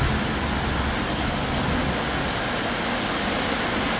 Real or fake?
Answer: real